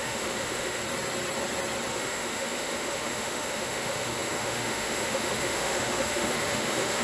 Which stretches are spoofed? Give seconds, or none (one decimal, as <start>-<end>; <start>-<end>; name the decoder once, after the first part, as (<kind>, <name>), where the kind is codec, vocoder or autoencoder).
0.0-0.8 (autoencoder, DAC-VAE); 1.9-7.0